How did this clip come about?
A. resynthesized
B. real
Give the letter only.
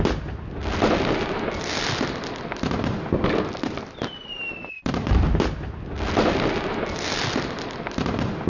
B